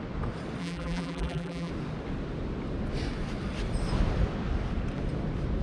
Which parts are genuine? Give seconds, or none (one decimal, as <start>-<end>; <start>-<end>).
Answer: 0.0-0.6; 1.7-5.6